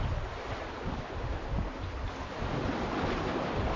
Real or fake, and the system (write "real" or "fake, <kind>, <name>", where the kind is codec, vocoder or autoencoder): fake, vocoder, BigVGAN v2